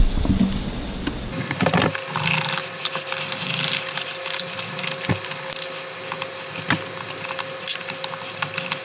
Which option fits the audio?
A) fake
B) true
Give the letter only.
B